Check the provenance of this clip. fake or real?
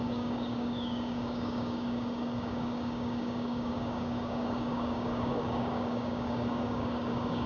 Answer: fake